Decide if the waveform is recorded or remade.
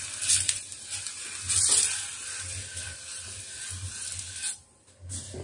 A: recorded